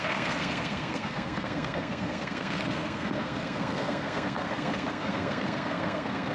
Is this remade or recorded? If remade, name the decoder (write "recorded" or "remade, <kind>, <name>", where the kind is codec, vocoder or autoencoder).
remade, codec, SNAC